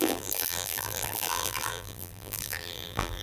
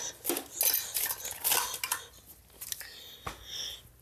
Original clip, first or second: second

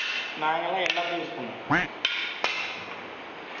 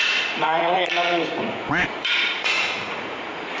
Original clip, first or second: first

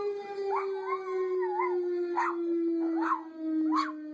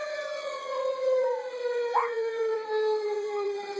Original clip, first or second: first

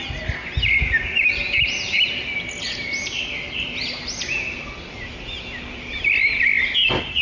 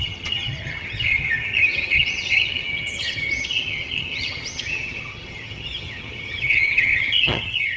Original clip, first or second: first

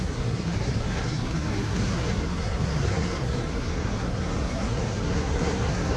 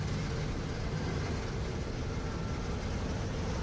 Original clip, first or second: second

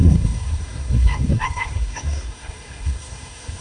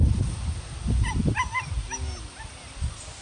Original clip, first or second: second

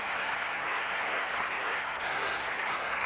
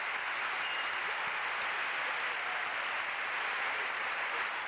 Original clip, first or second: second